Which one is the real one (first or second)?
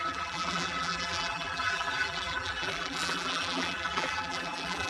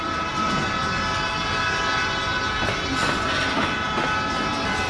second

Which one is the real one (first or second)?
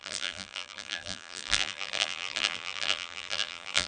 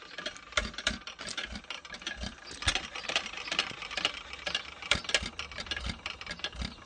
second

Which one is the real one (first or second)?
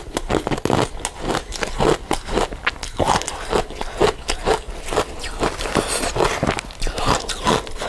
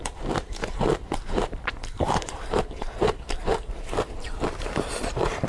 first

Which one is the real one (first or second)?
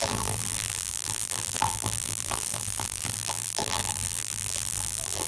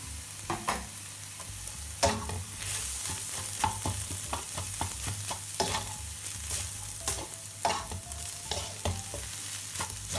second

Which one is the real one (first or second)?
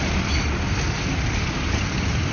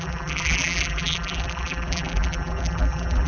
first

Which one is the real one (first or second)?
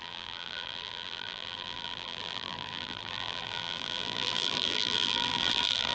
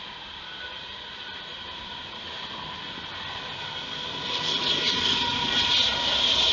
second